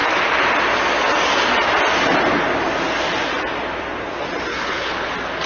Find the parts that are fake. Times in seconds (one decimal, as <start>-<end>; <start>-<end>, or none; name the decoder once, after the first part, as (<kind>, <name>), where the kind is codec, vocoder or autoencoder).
4.5-5.1 (codec, HILCodec)